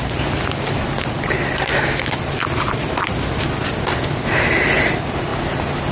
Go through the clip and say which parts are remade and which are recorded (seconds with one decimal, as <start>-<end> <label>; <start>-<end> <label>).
0.0-1.7 remade; 1.7-3.6 recorded; 3.6-5.9 remade